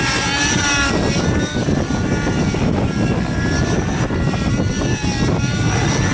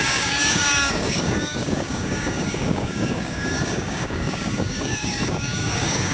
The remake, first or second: second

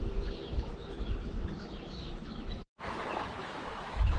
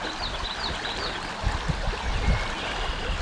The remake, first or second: first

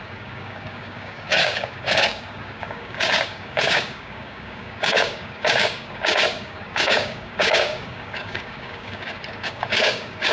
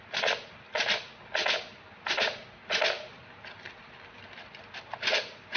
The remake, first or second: first